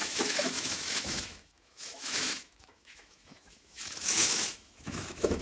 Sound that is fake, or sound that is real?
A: fake